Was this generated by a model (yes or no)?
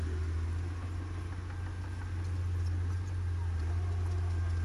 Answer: no